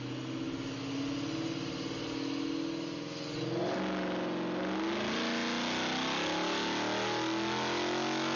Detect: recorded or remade recorded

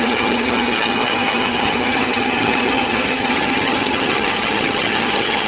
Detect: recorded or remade remade